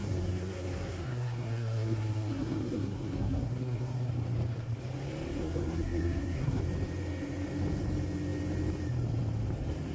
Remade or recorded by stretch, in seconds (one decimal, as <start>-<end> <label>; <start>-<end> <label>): 0.0-4.1 remade; 4.1-5.4 recorded; 5.4-6.6 remade; 6.6-9.9 recorded